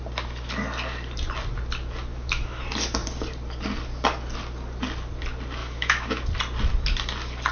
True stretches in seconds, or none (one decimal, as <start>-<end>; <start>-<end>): 0.0-2.1; 2.6-5.6; 6.2-7.5